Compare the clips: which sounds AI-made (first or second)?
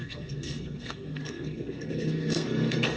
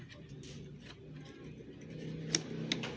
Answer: first